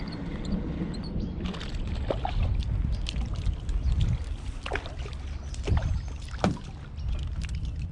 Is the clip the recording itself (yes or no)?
yes